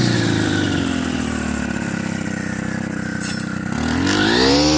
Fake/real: real